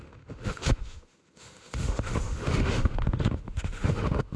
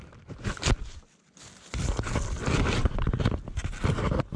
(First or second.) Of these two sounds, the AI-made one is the first